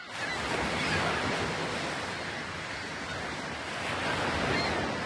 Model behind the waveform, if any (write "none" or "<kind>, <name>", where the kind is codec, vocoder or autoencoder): none